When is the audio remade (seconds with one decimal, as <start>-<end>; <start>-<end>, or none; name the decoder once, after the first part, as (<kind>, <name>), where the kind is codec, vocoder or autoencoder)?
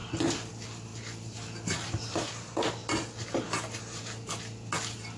none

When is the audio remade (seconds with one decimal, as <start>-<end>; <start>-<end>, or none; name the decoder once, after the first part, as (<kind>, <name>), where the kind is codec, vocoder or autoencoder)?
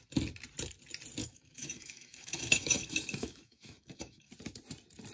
1.2-4.3 (autoencoder, DAC-VAE)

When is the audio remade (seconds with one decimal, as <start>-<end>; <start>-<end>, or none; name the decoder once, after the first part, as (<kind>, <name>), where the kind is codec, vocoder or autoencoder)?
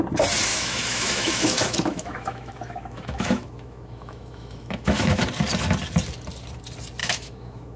0.5-5.2 (autoencoder, DAC-VAE); 7.0-7.8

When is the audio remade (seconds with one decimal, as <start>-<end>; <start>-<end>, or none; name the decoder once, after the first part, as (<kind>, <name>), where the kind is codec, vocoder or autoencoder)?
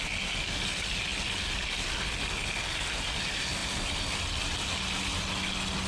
none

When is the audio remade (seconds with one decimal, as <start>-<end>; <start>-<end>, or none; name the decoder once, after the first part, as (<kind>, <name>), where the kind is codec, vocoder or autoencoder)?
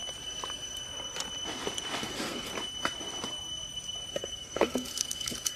2.0-2.5 (codec, SNAC); 4.1-5.6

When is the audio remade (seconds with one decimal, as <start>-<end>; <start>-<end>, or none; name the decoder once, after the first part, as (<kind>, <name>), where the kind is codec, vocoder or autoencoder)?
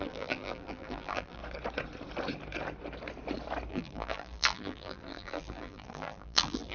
0.0-1.4 (vocoder, BigVGAN v2); 3.7-6.7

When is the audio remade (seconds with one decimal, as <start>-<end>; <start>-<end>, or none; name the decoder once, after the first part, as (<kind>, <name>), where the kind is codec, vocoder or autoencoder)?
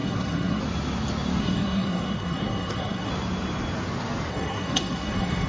0.0-0.6 (codec, SNAC); 1.4-3.1; 4.3-5.5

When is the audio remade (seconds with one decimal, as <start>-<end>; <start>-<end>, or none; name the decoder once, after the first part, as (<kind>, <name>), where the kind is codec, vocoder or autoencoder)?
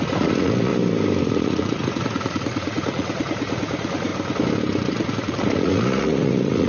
0.0-0.7 (vocoder, Vocos); 1.2-4.1; 4.9-6.7